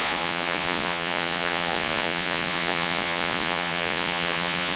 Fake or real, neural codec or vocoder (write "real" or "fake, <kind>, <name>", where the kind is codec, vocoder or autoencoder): fake, vocoder, Vocos